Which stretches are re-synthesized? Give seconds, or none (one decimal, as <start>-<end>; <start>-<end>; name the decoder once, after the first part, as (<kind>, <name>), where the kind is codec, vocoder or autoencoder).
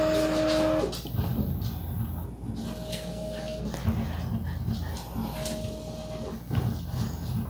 2.9-3.7 (codec, SNAC)